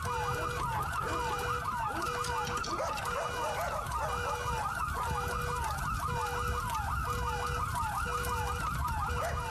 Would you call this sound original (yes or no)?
yes